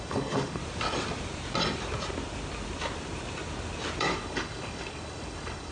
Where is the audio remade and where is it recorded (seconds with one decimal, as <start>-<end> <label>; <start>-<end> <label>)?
0.0-0.6 remade; 0.6-4.0 recorded; 4.0-5.7 remade